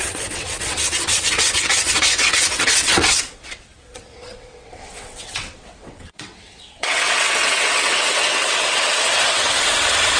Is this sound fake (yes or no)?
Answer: yes